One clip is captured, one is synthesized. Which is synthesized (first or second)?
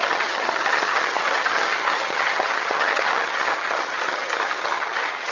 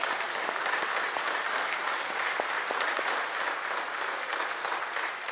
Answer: first